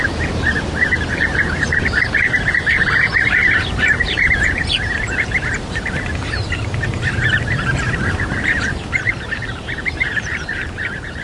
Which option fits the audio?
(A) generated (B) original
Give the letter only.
A